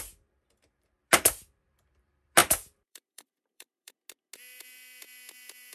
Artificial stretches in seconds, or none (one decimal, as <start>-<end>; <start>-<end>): 2.4-3.9